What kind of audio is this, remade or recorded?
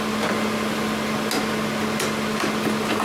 recorded